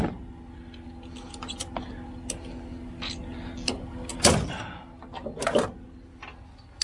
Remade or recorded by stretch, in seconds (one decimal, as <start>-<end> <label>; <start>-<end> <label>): 0.0-6.8 recorded